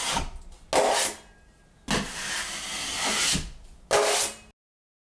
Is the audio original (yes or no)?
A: yes